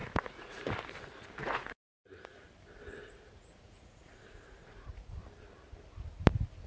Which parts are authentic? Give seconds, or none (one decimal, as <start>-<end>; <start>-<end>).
0.6-1.4; 1.9-3.0; 5.2-6.7